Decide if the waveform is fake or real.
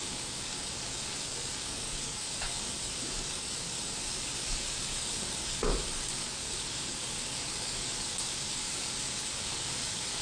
fake